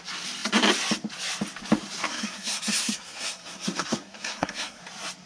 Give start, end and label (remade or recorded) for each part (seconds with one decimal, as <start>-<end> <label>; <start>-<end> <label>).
0.0-2.1 recorded; 2.1-4.8 remade; 4.8-5.3 recorded